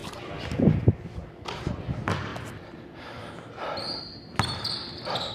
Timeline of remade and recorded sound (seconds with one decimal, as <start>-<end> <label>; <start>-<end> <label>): 0.0-5.3 recorded